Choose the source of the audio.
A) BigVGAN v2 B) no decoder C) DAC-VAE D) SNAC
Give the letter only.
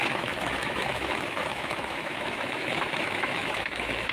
C